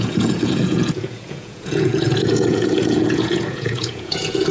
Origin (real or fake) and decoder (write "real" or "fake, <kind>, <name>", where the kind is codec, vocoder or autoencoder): fake, vocoder, Vocos